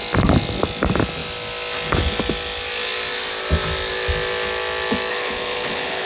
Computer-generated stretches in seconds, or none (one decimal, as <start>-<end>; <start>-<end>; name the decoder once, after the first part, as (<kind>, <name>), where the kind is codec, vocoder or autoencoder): 5.1-6.1 (codec, HILCodec)